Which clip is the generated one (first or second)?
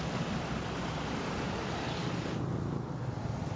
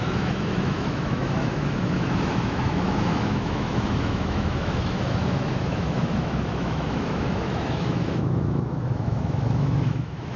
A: second